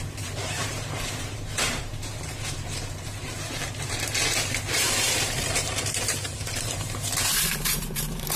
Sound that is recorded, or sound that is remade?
remade